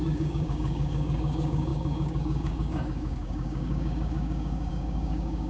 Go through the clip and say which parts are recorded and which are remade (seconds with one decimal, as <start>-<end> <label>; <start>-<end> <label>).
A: 0.0-5.5 remade